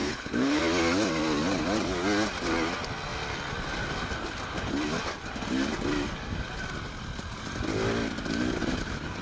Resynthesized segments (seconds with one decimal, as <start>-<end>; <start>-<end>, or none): 0.0-0.6